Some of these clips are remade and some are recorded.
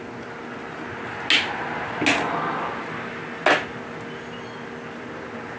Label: recorded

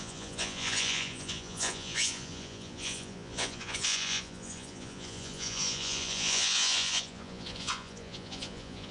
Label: remade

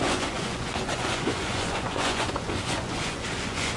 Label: remade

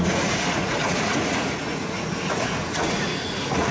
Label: remade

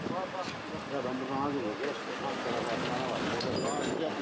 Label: recorded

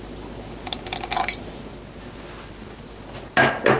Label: recorded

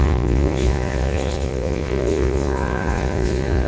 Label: remade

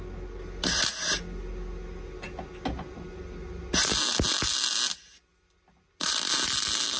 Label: recorded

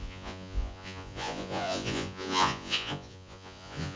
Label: remade